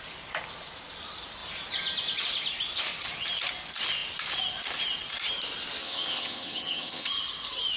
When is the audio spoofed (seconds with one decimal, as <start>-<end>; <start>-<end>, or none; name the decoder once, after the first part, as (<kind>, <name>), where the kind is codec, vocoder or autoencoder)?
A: 5.8-7.1 (vocoder, HiFi-GAN)